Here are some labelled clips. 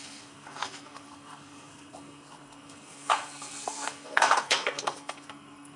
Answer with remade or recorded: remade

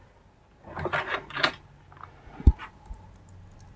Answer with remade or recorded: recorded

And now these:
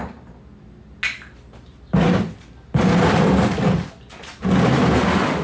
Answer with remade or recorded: recorded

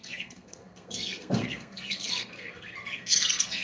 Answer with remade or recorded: remade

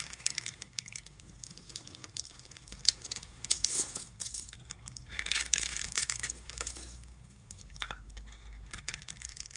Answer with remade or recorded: remade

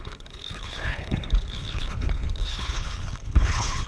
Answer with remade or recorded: remade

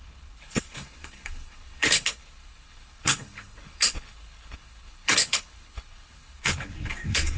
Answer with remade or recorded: remade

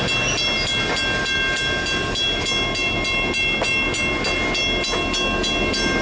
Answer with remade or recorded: recorded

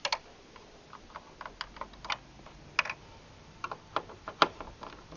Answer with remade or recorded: recorded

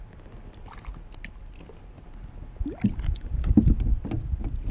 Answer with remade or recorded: recorded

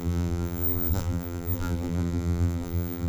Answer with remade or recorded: remade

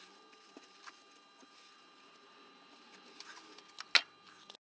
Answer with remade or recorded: recorded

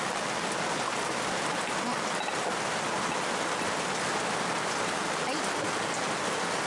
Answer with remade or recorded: recorded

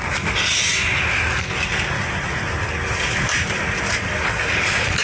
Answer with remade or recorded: recorded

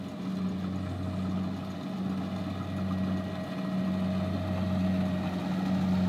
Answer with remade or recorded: recorded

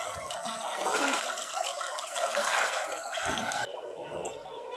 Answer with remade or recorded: remade